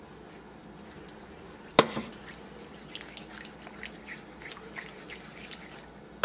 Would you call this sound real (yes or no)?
yes